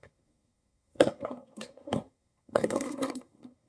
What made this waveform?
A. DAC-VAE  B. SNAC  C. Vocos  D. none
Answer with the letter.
B